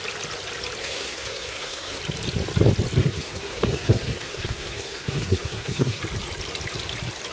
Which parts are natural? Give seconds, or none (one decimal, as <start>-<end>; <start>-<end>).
0.0-0.8; 2.0-3.0; 6.0-7.3